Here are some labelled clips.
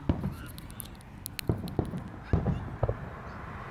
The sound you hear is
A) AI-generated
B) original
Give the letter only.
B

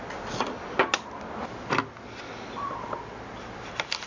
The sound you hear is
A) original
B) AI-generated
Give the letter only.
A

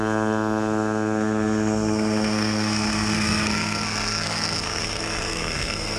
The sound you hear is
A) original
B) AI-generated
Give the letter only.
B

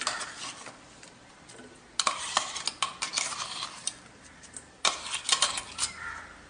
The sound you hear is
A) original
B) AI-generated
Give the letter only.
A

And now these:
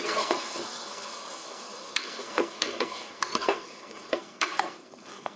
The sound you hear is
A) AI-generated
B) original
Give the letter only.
A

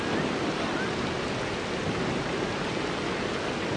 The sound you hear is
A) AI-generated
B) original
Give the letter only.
B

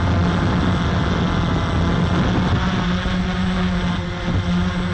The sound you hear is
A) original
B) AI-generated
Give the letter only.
A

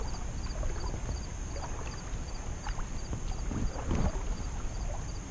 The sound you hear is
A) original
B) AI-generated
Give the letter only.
A